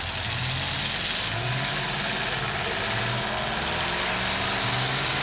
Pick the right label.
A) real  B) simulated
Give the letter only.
A